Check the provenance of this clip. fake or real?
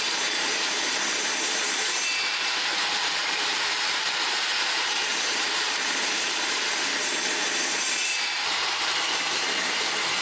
fake